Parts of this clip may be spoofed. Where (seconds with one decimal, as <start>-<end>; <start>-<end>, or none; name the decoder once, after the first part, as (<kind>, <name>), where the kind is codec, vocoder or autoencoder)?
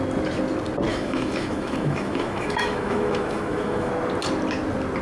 0.9-3.9 (autoencoder, DAC-VAE)